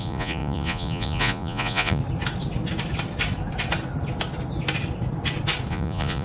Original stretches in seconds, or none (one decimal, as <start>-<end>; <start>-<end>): 2.0-5.7